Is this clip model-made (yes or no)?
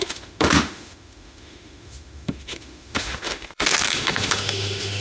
yes